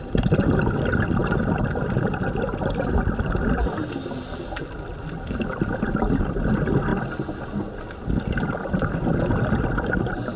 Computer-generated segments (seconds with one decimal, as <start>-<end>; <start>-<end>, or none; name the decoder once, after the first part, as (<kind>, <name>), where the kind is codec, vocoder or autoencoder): none